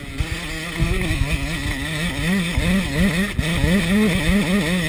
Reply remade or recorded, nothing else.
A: recorded